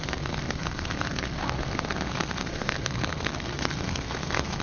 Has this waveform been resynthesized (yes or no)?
yes